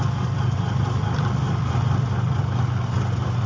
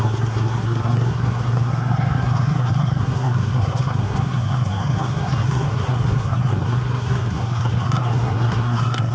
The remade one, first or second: second